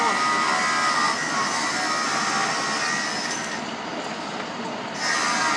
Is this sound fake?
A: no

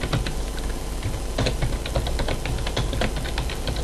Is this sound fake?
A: no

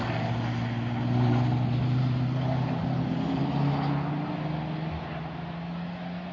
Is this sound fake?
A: no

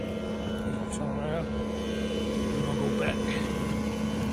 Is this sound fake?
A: no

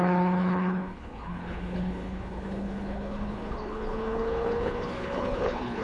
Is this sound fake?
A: yes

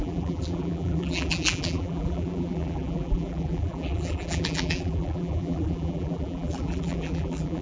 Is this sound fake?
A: yes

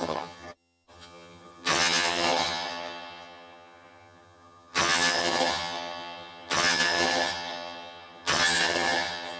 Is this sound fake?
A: yes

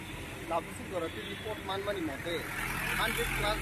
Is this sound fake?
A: no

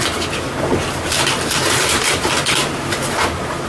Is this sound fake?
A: yes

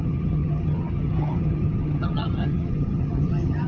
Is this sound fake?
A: yes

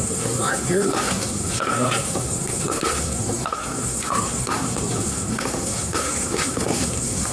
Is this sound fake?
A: yes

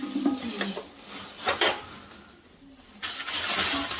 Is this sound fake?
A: no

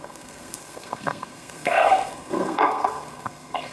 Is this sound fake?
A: yes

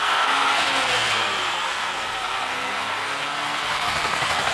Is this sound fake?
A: yes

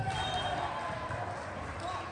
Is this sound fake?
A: no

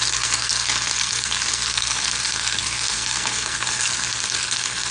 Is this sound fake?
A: yes